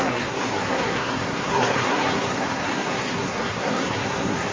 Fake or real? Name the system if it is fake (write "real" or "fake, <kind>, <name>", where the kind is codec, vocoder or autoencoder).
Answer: fake, codec, SNAC